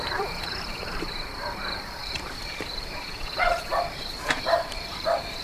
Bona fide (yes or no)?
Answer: no